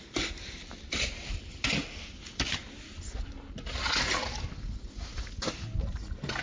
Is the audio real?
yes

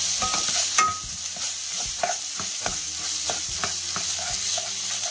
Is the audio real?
yes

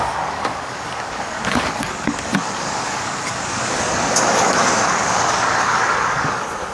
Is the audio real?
no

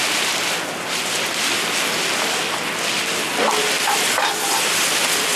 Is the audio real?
yes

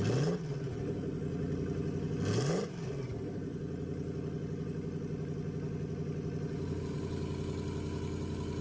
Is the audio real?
yes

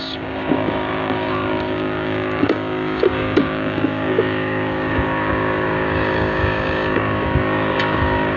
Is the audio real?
no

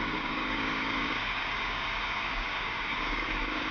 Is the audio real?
no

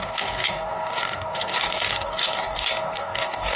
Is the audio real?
no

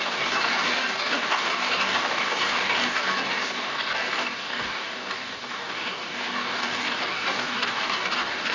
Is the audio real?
no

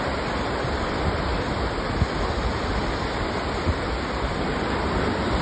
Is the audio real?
yes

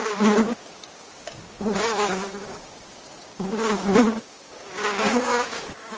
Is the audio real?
no